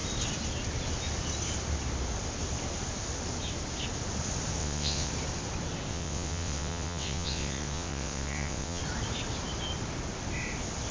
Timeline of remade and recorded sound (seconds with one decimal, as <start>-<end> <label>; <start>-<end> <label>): 0.0-4.6 recorded; 4.6-5.1 remade; 5.1-5.9 recorded; 5.9-8.8 remade; 8.8-10.9 recorded